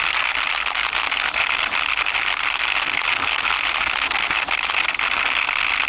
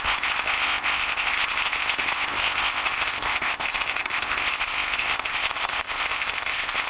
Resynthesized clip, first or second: second